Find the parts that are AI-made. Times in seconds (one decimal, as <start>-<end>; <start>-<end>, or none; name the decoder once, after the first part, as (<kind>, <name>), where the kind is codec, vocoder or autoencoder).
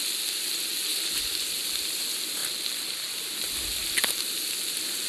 0.9-1.5 (vocoder, BigVGAN v2)